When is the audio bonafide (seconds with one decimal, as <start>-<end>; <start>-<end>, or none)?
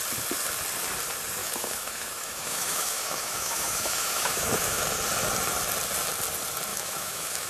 0.0-1.4; 4.8-6.7